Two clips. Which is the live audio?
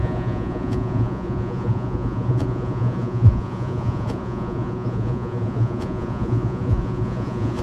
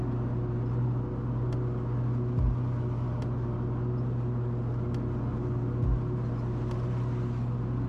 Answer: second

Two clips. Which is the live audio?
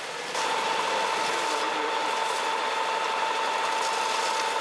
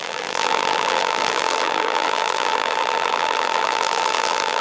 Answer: first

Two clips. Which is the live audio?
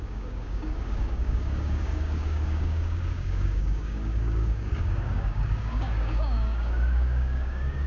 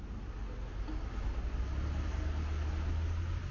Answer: second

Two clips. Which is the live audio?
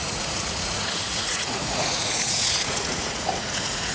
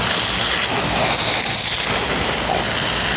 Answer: second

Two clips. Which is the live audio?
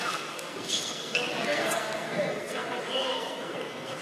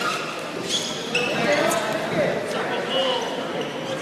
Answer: second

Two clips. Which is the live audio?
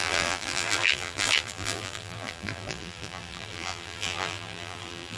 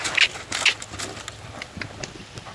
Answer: second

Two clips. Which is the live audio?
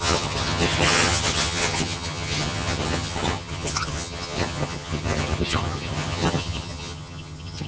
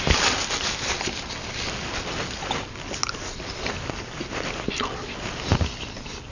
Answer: second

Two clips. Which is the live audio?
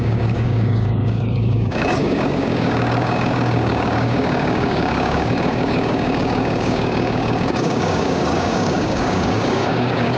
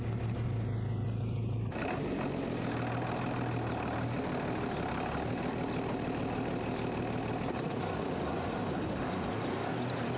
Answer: second